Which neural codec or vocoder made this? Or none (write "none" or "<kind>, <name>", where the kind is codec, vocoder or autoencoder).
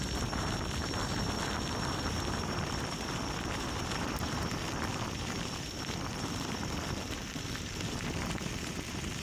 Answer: vocoder, BigVGAN v2